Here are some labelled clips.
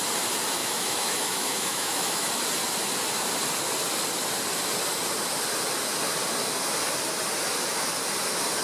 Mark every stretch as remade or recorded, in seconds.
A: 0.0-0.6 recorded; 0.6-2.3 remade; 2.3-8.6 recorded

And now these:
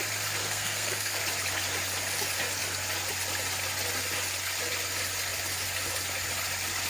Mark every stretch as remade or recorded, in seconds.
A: 0.0-0.4 recorded; 0.4-1.2 remade; 1.2-6.9 recorded

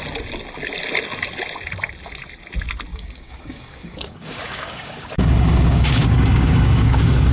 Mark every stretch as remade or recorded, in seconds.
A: 0.0-2.9 recorded; 2.9-7.3 remade

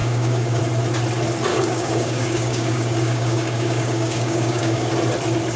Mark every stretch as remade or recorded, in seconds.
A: 0.0-0.6 remade; 0.6-1.5 recorded; 1.5-4.9 remade; 4.9-5.6 recorded

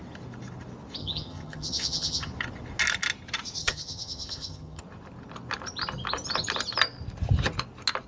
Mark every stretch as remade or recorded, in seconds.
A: 0.0-1.0 recorded; 1.0-2.3 remade; 2.3-3.6 recorded; 3.6-4.8 remade; 4.8-8.1 recorded